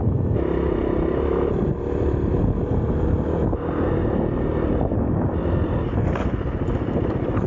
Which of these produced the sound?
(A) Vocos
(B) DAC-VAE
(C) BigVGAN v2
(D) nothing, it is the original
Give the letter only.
D